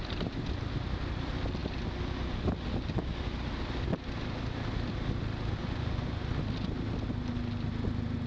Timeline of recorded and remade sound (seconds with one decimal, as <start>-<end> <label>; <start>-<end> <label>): 0.0-5.6 recorded; 5.6-6.3 remade; 6.3-8.3 recorded